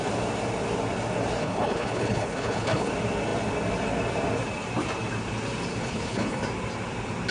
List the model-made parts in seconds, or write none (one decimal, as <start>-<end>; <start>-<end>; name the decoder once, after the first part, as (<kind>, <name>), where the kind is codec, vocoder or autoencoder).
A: 1.4-2.9 (codec, HILCodec); 5.8-6.4